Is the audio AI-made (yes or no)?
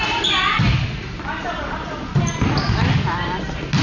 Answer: no